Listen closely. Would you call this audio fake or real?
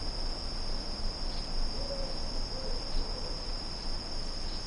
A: real